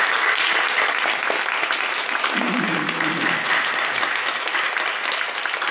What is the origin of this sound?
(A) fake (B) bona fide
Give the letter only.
B